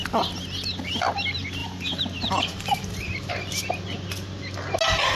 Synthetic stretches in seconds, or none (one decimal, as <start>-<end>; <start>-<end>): 1.6-3.3